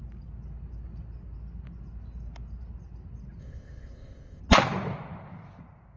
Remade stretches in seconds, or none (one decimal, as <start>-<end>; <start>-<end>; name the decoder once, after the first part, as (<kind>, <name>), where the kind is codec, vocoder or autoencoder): 3.4-4.4 (codec, ZipCodec)